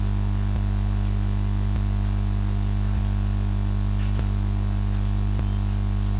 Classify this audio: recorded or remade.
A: recorded